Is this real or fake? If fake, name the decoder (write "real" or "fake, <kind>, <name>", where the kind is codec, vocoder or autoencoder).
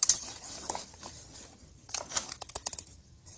fake, vocoder, HiFi-GAN